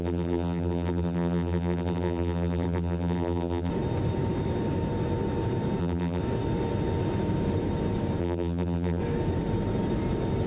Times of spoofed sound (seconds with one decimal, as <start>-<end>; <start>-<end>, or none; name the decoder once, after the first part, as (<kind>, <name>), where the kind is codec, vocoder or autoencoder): 0.0-3.7 (vocoder, BigVGAN v2); 5.8-6.2; 8.2-9.0

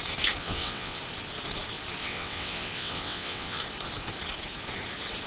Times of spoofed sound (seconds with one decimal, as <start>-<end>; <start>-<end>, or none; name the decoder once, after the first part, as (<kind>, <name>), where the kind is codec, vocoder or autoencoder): 0.4-1.0 (vocoder, WaveNeXt); 2.0-3.6

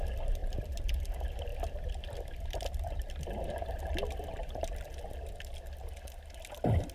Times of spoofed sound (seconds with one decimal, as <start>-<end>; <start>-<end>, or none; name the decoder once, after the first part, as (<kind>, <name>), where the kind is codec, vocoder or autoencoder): 0.4-1.0 (vocoder, BigVGAN v2); 1.5-3.5